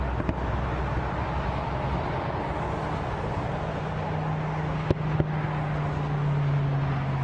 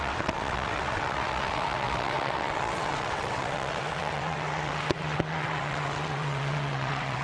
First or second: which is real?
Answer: first